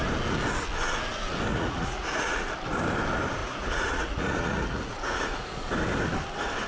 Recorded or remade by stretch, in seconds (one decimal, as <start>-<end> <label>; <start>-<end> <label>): 0.0-1.5 recorded; 1.5-2.5 remade; 2.5-3.4 recorded; 3.4-5.7 remade; 5.7-6.7 recorded